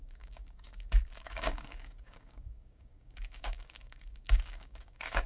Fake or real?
fake